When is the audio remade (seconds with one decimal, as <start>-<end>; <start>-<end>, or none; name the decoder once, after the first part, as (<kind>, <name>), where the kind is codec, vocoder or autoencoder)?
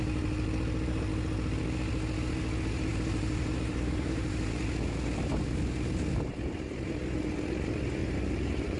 2.9-4.6 (vocoder, BigVGAN v2); 8.0-8.8